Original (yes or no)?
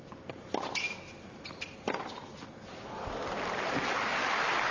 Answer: yes